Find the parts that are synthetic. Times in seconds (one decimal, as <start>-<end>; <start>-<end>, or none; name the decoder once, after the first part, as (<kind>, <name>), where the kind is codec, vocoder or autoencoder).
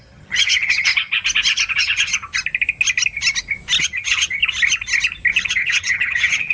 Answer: 0.0-0.9 (vocoder, HiFi-GAN); 1.7-2.1; 3.8-4.4; 5.5-6.5